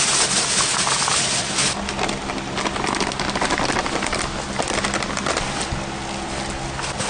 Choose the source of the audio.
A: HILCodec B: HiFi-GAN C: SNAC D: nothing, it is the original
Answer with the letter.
D